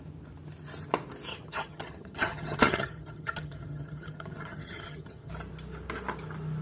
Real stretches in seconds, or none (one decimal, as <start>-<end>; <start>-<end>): 0.0-1.3; 5.3-6.6